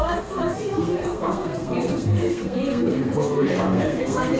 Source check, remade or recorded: remade